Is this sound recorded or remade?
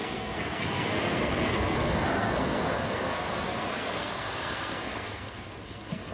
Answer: remade